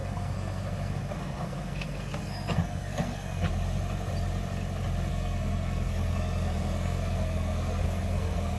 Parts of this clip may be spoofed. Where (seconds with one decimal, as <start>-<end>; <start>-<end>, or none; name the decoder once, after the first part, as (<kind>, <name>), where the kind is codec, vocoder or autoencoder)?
0.0-3.5 (codec, SNAC); 5.1-8.6